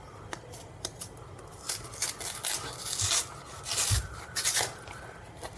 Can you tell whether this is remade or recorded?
recorded